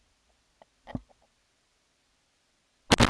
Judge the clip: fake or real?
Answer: real